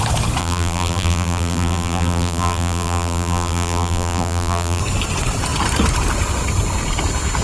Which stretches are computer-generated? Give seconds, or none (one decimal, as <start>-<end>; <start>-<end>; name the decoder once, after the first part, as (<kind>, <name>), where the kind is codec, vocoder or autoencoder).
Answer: 0.4-4.8 (vocoder, BigVGAN v2)